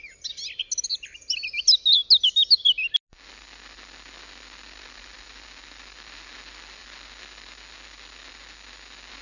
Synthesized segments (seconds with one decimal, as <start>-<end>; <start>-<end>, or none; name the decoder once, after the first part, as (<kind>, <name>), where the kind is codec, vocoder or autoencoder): none